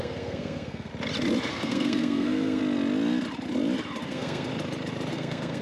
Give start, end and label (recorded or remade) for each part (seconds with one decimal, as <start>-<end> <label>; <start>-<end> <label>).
0.0-0.9 remade; 0.9-1.5 recorded; 1.5-2.6 remade; 2.6-4.0 recorded; 4.0-4.5 remade; 4.5-5.1 recorded; 5.1-5.6 remade